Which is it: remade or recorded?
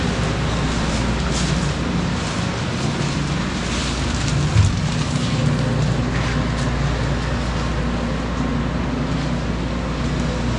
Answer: recorded